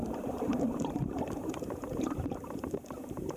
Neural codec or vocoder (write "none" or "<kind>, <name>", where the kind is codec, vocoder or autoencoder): vocoder, BigVGAN v2